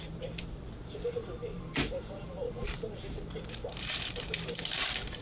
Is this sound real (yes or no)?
no